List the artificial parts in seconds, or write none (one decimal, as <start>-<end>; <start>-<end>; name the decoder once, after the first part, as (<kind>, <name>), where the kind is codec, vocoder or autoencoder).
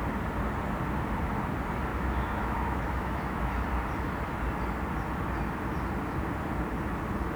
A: 1.9-3.5 (autoencoder, DAC-VAE)